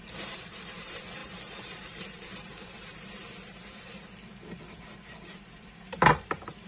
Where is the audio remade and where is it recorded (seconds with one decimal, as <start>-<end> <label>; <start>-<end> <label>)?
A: 0.0-6.7 remade